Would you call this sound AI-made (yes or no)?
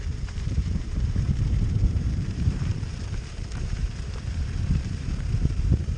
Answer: yes